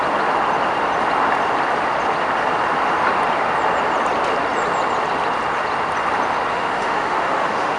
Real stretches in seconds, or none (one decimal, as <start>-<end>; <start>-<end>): 0.0-6.5